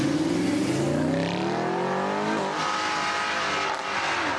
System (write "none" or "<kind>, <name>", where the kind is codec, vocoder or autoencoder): none